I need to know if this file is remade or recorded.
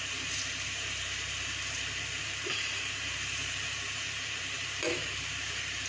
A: remade